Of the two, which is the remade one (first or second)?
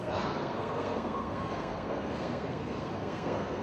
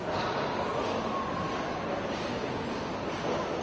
first